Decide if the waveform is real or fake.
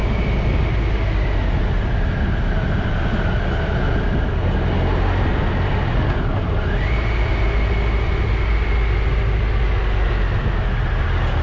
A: real